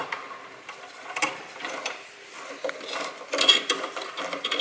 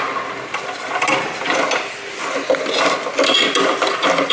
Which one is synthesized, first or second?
first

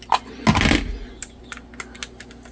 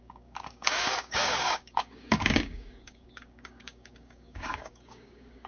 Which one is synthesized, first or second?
second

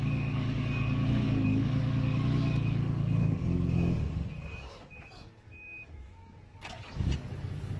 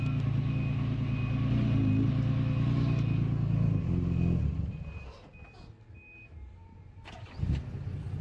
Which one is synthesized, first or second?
first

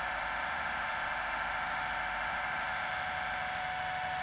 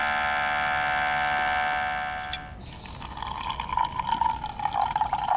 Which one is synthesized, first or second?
first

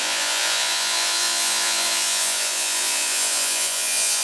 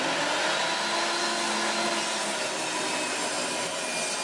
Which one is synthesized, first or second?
first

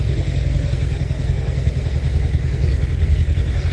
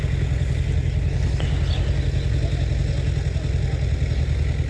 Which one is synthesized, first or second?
first